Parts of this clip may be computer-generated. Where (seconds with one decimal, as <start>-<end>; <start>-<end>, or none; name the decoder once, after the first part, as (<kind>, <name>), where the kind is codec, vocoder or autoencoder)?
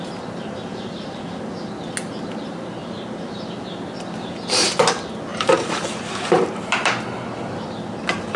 0.7-1.2 (vocoder, BigVGAN v2); 2.8-3.6; 5.3-6.9